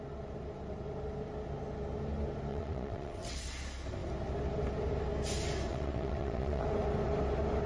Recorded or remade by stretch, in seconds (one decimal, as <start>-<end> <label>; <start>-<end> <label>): 0.0-2.5 recorded; 2.5-3.5 remade; 3.5-5.7 recorded; 5.7-6.6 remade; 6.6-7.7 recorded